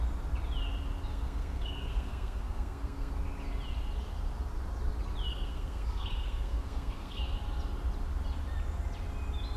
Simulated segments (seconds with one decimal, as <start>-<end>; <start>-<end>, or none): 1.1-3.1; 5.3-7.2